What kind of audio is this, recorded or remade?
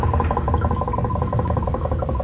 recorded